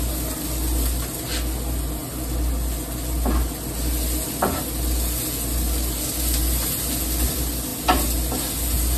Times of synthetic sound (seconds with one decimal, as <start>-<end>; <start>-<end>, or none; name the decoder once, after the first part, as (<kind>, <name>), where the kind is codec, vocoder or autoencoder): none

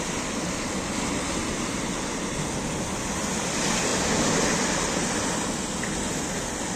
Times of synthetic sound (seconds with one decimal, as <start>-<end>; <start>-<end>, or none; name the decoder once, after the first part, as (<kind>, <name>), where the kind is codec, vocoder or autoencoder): none